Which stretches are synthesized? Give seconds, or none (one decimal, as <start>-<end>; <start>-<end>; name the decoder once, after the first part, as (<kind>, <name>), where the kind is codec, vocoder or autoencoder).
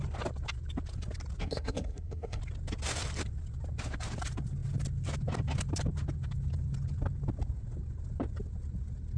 1.4-2.4 (codec, SNAC)